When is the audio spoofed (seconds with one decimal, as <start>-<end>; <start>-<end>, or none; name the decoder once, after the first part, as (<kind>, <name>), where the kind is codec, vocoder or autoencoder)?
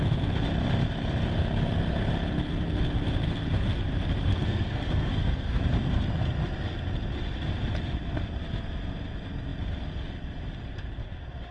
4.3-5.6 (codec, SNAC)